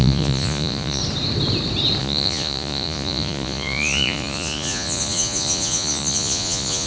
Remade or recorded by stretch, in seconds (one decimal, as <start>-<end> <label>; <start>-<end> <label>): 0.0-1.0 remade; 1.0-2.0 recorded; 2.0-6.9 remade